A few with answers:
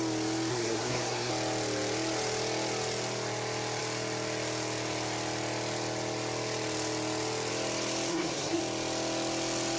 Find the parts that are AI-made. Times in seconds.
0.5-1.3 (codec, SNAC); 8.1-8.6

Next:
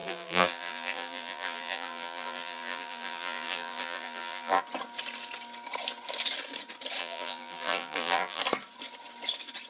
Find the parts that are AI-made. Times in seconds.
0.0-4.6 (vocoder, BigVGAN v2); 7.0-8.4

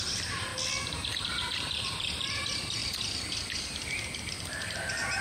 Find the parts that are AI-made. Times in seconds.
0.0-0.5 (vocoder, BigVGAN v2); 1.2-2.8; 4.3-5.2

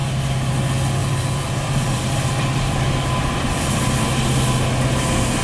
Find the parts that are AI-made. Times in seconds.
0.0-0.5 (vocoder, BigVGAN v2); 1.0-4.2

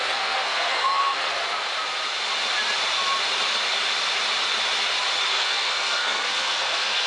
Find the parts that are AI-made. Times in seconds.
0.0-1.3 (codec, SNAC); 5.3-7.1

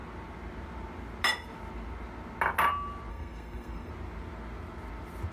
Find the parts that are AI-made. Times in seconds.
3.1-3.9 (codec, SNAC)

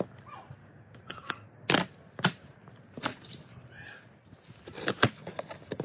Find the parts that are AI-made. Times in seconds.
0.6-1.3 (codec, DAC)